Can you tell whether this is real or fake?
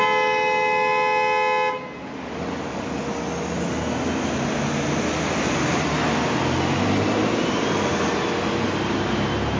real